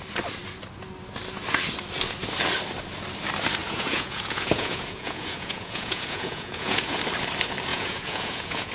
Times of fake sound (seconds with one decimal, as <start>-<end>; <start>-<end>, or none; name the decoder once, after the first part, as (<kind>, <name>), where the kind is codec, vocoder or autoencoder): 3.6-7.0 (vocoder, Vocos); 7.7-8.7